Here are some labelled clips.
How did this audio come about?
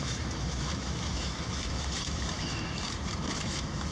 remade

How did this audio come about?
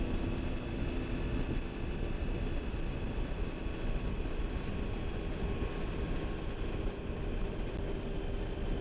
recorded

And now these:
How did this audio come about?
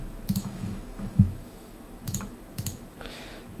remade